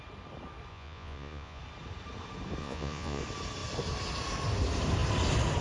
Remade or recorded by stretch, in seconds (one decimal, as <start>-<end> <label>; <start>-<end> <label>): 0.0-0.7 recorded; 0.7-1.6 remade; 1.6-2.6 recorded; 2.6-3.2 remade; 3.2-5.6 recorded